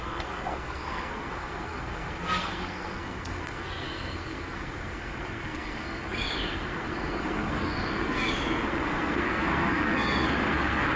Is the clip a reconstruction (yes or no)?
yes